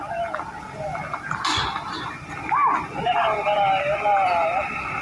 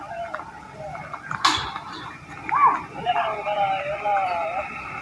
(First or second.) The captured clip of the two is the first